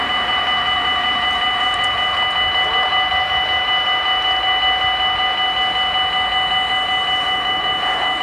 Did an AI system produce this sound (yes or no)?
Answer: no